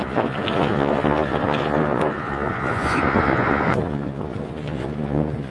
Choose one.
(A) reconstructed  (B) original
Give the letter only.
A